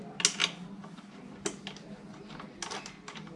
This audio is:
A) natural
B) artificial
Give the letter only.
A